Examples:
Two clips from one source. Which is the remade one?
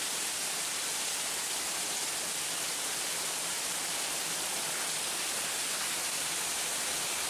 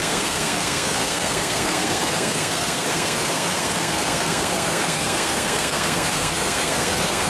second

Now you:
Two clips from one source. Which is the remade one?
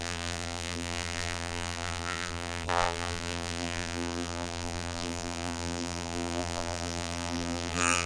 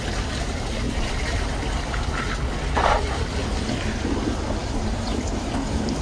first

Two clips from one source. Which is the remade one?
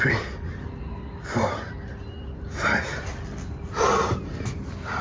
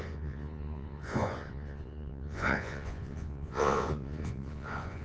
second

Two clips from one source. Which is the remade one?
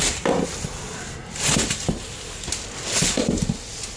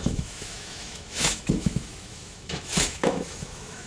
second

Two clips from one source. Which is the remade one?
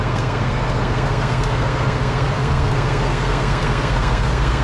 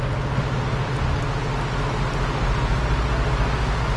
first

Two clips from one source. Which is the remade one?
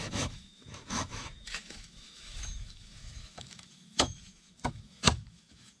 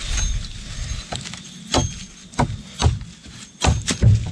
first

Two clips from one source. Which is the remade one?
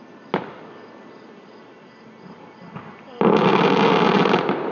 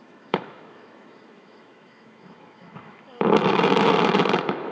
second